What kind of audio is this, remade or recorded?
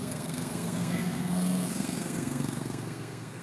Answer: remade